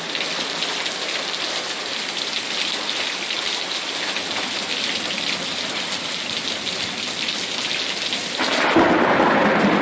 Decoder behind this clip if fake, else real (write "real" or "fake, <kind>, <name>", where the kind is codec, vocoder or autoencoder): real